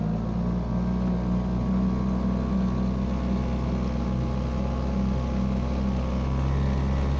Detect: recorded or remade recorded